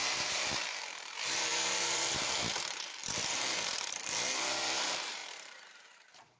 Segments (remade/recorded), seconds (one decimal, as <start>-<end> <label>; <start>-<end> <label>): 0.0-6.4 remade